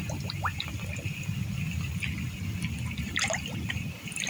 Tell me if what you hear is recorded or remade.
remade